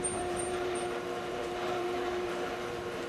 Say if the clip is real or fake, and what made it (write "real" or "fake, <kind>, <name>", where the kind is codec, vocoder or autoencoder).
fake, vocoder, BigVGAN v2